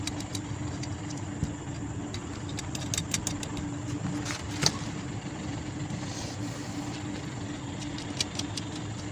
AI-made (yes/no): no